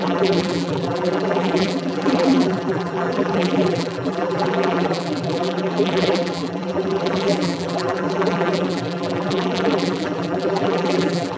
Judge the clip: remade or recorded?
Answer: remade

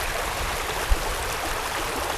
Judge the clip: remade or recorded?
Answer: recorded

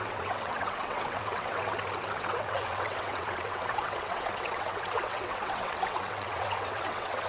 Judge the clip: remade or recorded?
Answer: remade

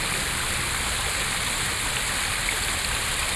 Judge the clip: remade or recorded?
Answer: recorded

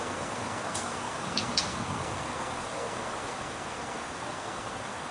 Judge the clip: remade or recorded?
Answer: remade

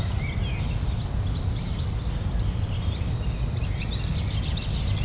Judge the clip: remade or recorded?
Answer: recorded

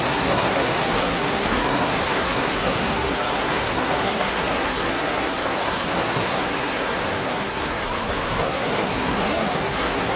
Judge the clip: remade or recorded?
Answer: remade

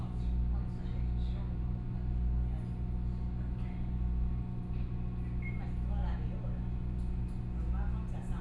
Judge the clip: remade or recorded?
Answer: recorded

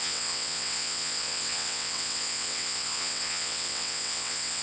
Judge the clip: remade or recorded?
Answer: remade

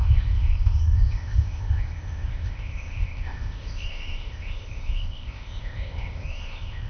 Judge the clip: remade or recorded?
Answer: remade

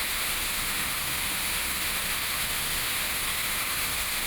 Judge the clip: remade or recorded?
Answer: remade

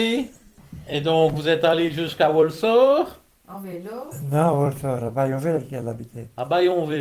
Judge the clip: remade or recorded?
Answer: remade